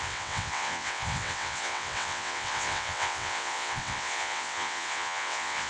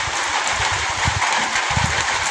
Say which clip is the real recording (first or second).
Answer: second